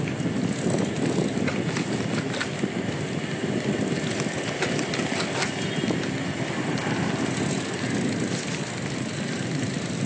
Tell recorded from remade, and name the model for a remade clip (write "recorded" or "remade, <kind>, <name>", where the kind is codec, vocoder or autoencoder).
recorded